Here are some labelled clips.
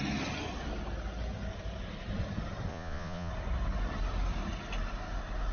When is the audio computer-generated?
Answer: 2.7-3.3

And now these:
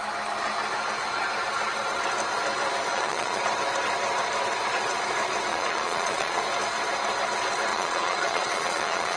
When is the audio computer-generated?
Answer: 2.9-3.4; 5.5-6.4; 7.7-9.2

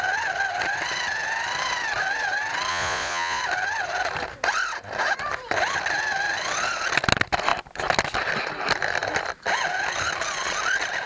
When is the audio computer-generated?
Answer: 2.7-3.4

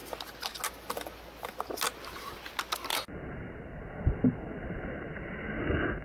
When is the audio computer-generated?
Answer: none